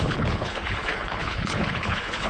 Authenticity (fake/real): fake